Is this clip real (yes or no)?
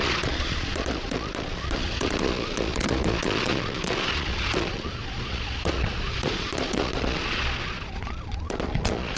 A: no